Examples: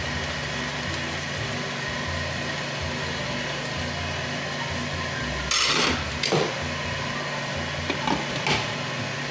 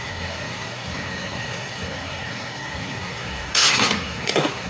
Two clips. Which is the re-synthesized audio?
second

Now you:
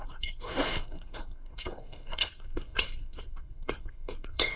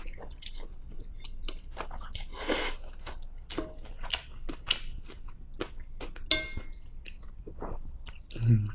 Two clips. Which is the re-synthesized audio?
first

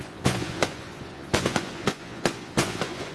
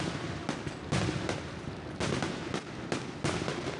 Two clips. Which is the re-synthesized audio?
first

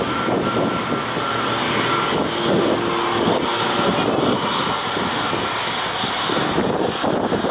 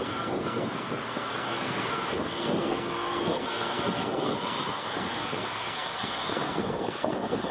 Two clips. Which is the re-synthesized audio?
second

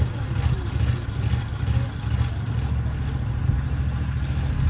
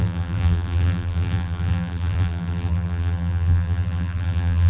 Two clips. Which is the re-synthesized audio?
second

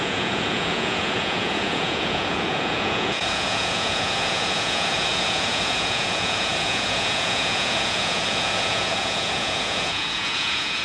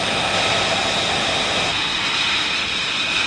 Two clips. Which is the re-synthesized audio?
first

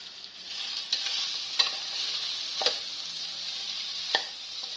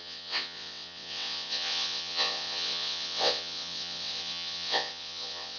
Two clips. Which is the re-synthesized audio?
second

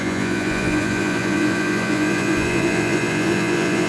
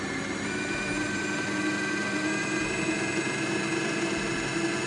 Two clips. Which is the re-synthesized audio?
first